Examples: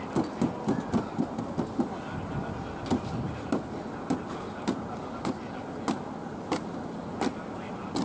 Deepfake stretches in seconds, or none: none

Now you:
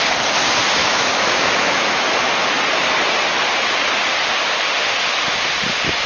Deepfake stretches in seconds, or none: 0.8-2.6

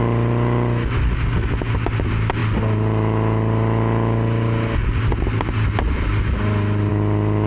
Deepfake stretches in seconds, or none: none

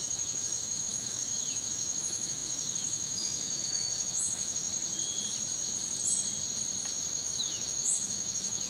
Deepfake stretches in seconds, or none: 0.0-4.7; 7.1-8.7

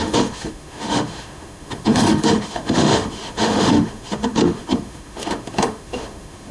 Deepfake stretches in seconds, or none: 0.0-6.5